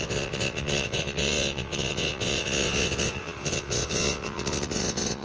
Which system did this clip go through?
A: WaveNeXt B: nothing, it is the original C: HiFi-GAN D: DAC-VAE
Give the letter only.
A